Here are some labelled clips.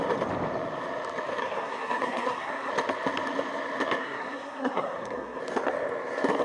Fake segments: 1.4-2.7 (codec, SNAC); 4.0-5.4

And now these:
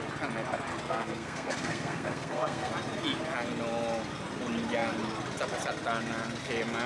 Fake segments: 0.7-2.7 (codec, SNAC)

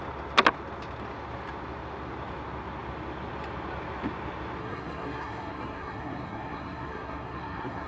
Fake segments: 4.6-7.9 (codec, SNAC)

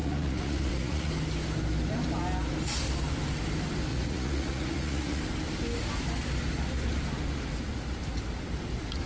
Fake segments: 0.0-1.1 (vocoder, Vocos); 3.9-5.2

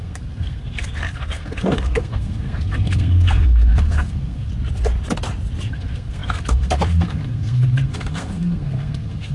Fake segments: 0.0-4.5 (codec, SNAC); 5.7-9.3